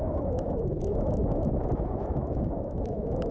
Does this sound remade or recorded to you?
remade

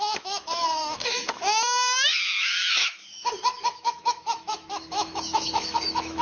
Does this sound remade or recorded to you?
remade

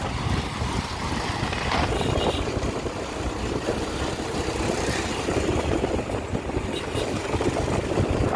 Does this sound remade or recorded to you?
recorded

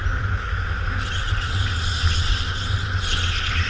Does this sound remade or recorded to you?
recorded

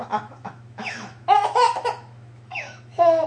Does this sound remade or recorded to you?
remade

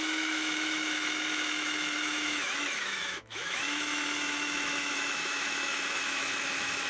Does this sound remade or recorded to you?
remade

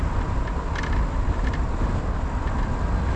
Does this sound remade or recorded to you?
recorded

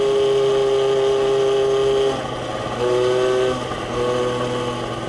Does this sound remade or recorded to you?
recorded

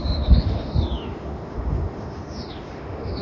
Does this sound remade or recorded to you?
remade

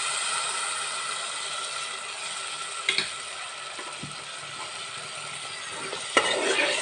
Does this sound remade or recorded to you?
recorded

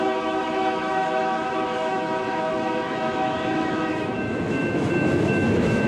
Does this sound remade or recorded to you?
remade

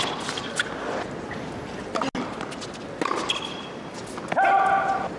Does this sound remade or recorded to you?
recorded